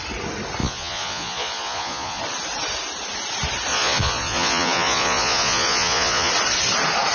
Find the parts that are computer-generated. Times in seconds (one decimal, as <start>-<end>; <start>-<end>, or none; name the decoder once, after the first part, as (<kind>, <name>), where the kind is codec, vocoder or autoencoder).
0.6-2.2 (vocoder, Vocos); 3.7-6.3